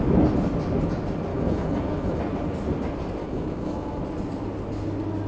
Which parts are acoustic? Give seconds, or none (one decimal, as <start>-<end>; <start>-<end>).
0.0-1.3; 2.2-3.2; 4.0-5.3